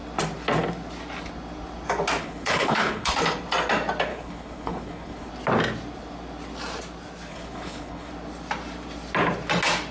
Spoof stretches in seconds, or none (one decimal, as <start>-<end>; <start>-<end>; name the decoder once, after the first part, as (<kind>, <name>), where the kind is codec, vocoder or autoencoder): 2.2-3.1 (codec, HILCodec); 4.1-5.3; 7.3-8.1